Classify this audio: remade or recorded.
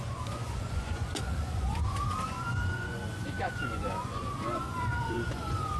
remade